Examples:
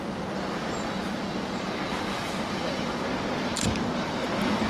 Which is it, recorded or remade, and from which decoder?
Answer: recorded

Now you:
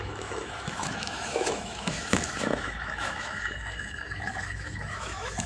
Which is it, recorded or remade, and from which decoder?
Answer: remade, autoencoder, DAC-VAE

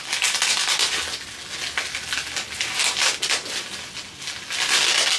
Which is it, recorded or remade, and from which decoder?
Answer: recorded